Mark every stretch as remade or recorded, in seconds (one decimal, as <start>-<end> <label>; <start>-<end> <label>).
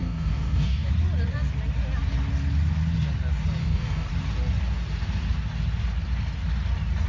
0.0-0.9 remade; 0.9-3.6 recorded; 3.6-4.1 remade; 4.1-7.1 recorded